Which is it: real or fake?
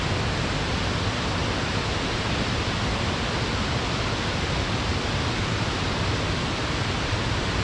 real